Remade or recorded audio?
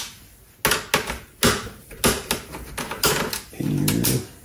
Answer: recorded